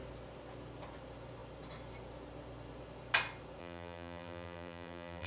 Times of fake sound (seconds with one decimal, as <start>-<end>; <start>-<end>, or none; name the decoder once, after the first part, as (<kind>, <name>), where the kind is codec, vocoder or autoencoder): 3.6-5.3 (vocoder, BigVGAN v2)

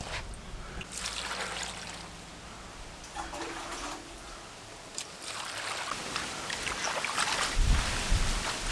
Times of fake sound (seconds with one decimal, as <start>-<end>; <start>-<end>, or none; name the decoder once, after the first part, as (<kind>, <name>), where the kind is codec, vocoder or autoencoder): none

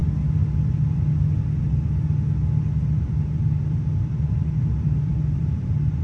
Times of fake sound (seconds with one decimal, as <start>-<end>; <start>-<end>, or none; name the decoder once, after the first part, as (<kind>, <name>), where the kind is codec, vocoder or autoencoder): 3.6-6.0 (vocoder, BigVGAN v2)

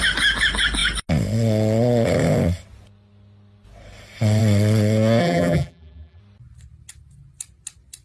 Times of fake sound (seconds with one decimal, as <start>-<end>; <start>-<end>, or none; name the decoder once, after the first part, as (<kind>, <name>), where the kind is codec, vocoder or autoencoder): 5.2-6.2 (vocoder, BigVGAN v2)

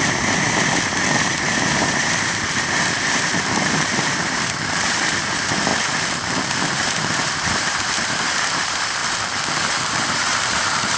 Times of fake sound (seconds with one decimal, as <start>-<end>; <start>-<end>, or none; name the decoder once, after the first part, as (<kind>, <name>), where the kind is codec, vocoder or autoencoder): 0.0-5.7 (vocoder, BigVGAN v2); 6.5-9.0; 9.9-11.0

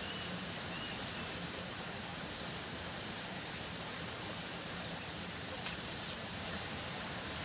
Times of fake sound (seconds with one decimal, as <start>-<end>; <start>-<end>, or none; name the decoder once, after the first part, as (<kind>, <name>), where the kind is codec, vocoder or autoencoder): 0.0-7.4 (vocoder, BigVGAN v2)